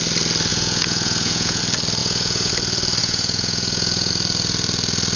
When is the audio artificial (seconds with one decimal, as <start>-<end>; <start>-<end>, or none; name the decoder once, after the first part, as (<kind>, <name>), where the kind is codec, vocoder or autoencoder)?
0.5-1.6 (vocoder, Vocos); 2.0-2.5; 3.0-4.1